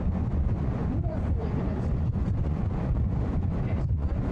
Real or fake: fake